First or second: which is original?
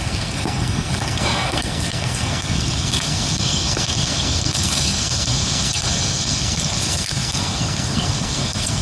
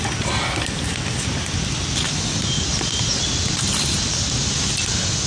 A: second